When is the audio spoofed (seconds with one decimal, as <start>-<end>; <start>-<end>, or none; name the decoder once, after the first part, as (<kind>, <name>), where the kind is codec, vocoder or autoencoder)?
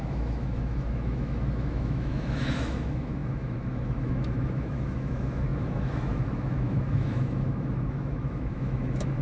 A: 0.0-9.2 (autoencoder, DAC-VAE)